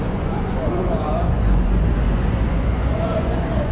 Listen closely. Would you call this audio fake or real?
fake